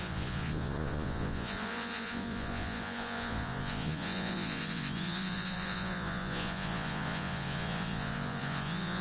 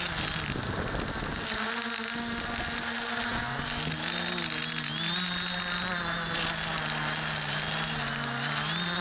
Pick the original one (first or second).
second